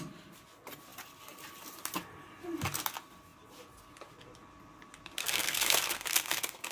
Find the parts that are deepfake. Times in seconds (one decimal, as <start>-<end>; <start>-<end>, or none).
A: 5.2-6.7